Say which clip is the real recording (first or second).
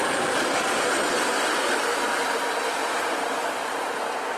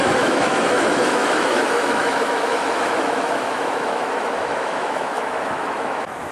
first